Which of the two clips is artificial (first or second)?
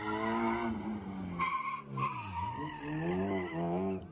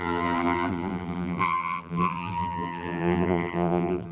second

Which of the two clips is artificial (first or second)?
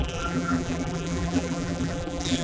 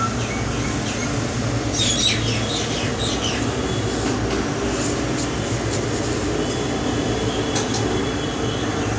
first